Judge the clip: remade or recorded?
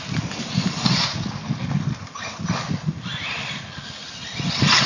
recorded